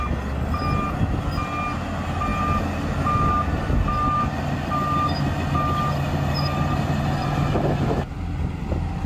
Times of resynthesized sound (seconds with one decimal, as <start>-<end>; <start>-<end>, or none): none